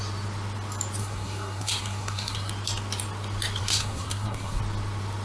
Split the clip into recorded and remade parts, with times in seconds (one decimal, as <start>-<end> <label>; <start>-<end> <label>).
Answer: 0.0-1.0 recorded; 1.0-2.5 remade; 2.5-3.6 recorded; 3.6-4.6 remade; 4.6-5.2 recorded